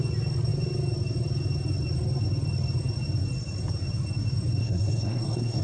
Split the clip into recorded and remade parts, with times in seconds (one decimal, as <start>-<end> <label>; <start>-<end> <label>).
0.0-4.6 recorded; 4.6-5.6 remade